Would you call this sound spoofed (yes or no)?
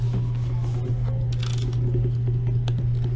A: no